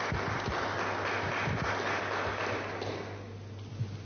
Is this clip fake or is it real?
real